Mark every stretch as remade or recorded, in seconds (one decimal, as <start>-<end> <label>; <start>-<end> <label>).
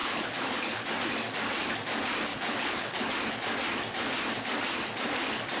0.0-0.9 remade; 0.9-2.3 recorded; 2.3-3.1 remade; 3.1-5.6 recorded